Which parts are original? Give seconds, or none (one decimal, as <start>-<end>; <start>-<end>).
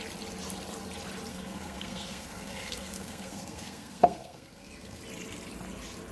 0.0-1.3; 5.0-6.1